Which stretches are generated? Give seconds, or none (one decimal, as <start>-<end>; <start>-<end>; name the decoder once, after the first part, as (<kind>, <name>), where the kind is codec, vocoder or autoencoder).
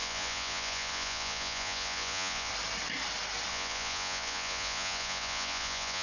0.0-2.5 (vocoder, Vocos); 3.5-6.0